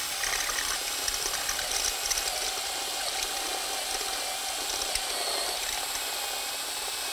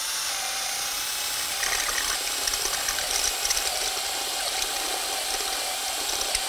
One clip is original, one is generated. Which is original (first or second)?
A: first